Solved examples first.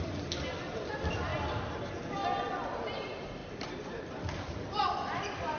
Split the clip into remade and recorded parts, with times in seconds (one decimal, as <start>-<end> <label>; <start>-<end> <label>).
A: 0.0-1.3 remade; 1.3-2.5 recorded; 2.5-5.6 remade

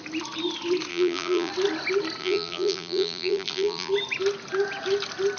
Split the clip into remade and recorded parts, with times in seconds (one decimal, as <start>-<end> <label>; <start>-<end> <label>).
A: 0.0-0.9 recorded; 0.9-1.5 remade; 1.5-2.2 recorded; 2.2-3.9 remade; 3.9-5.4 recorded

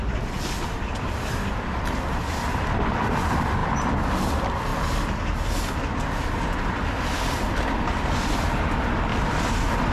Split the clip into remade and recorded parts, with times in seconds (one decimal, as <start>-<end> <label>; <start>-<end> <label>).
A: 0.0-4.7 remade; 4.7-6.3 recorded; 6.3-9.9 remade

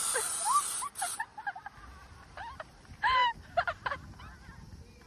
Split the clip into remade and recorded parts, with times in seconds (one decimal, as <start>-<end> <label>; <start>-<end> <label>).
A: 0.0-1.3 recorded; 1.3-4.2 remade; 4.2-5.1 recorded

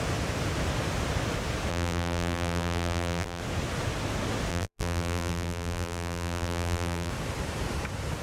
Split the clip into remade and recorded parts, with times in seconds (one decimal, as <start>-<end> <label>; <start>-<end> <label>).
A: 0.0-1.7 recorded; 1.7-3.4 remade; 3.4-4.5 recorded; 4.5-7.1 remade; 7.1-8.2 recorded

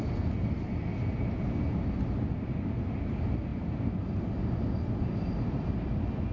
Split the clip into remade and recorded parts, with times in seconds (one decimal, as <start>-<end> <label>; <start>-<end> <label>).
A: 0.0-3.5 recorded; 3.5-4.4 remade; 4.4-6.3 recorded

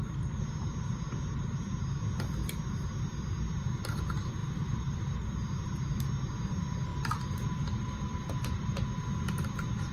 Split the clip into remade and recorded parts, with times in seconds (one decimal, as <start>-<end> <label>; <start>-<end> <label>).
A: 0.0-4.4 recorded; 4.4-5.0 remade; 5.0-6.9 recorded; 6.9-9.0 remade; 9.0-9.9 recorded

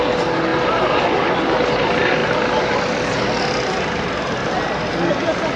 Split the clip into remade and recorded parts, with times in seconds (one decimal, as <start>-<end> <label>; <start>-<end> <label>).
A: 0.0-2.2 recorded; 2.2-2.9 remade; 2.9-5.6 recorded